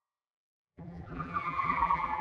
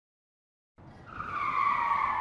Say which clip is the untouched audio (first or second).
second